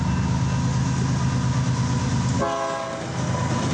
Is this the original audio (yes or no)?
yes